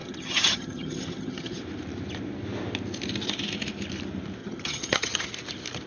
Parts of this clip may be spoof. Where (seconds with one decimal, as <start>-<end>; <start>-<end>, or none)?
0.0-1.6; 4.4-5.3